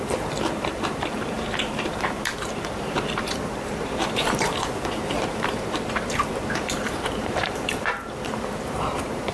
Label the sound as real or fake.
fake